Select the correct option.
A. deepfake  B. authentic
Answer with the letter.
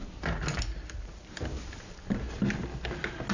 B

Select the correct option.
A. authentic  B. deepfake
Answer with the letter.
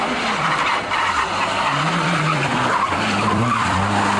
B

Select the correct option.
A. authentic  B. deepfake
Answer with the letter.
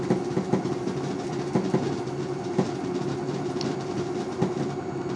A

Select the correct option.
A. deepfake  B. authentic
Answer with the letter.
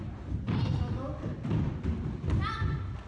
B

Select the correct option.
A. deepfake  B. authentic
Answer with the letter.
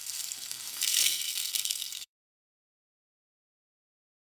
A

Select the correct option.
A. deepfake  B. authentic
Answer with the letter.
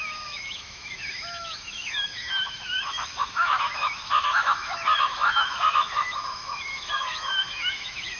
A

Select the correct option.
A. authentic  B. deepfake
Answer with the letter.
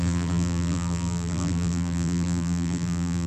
B